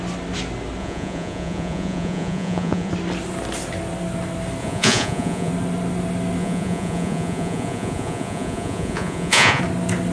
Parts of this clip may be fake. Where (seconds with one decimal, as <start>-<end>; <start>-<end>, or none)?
0.8-2.9; 4.6-5.5; 6.4-9.6